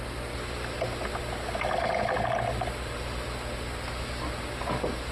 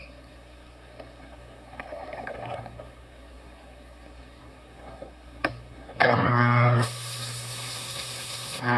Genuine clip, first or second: first